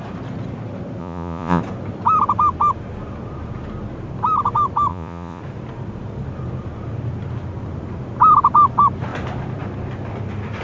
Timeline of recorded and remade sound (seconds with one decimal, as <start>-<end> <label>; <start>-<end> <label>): 0.0-1.0 recorded; 1.0-1.6 remade; 1.6-4.9 recorded; 4.9-5.4 remade; 5.4-10.6 recorded